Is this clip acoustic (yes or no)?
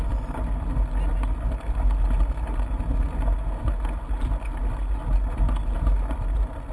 yes